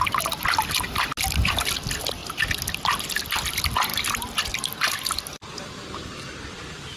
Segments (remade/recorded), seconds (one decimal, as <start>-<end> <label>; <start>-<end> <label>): 0.0-3.9 recorded; 3.9-7.0 remade